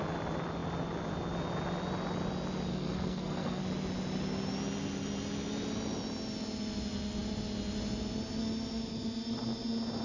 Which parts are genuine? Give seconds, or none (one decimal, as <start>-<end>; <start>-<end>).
0.0-2.7; 3.6-10.0